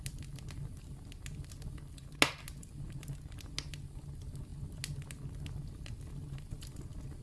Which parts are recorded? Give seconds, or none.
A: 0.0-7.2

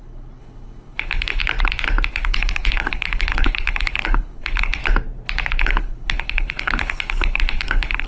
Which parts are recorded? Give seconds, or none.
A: 1.4-2.1; 4.8-5.6

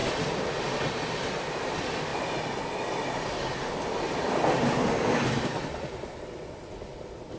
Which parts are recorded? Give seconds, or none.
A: 0.0-7.4

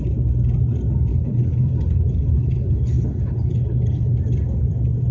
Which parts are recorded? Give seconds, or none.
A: 0.0-1.1; 4.2-5.1